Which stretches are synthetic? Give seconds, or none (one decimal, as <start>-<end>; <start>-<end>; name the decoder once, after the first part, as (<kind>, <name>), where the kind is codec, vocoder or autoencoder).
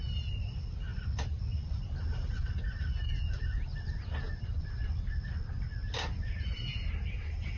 none